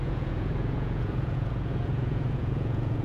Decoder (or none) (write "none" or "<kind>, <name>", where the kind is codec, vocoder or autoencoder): vocoder, Vocos